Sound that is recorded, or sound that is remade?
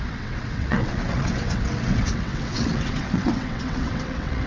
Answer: remade